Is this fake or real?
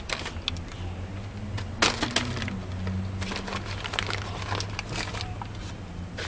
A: real